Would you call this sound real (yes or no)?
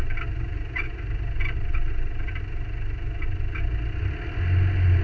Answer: yes